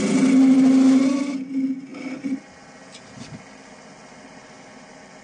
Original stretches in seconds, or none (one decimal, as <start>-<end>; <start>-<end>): 0.0-5.2